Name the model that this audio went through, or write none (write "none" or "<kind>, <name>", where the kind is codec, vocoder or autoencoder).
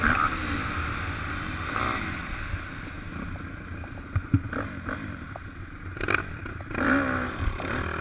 none